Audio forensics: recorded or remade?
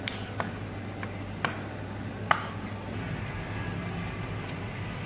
recorded